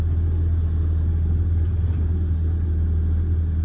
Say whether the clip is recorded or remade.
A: recorded